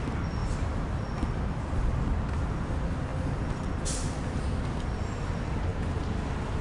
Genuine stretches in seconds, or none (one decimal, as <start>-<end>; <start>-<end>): 0.0-6.6